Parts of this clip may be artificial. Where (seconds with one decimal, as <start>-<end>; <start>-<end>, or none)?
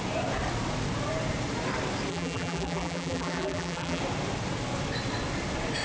2.1-4.0